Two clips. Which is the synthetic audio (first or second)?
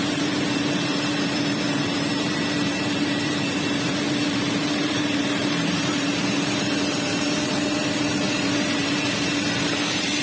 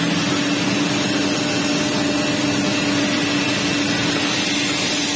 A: first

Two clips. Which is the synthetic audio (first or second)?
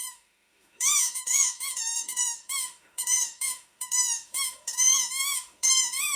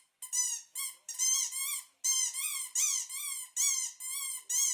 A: first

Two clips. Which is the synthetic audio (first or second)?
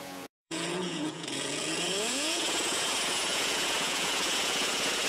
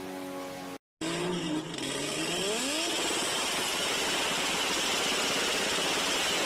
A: first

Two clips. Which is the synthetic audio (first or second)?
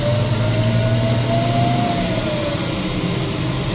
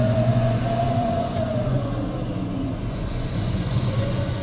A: second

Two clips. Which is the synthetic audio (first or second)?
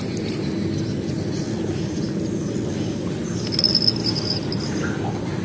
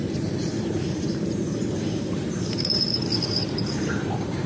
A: second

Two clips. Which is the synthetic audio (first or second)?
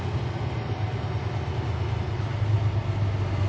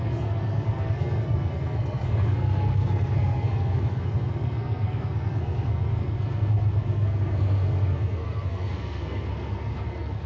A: second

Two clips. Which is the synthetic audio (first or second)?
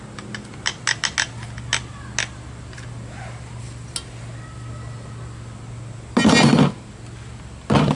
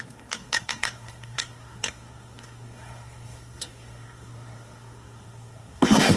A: second